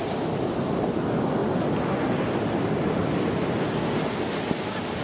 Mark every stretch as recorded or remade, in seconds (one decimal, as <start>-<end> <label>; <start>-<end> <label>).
0.0-5.0 recorded